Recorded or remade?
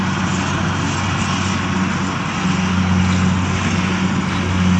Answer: recorded